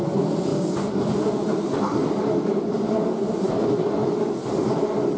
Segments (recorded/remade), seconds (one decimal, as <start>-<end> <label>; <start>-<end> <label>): 0.0-5.2 recorded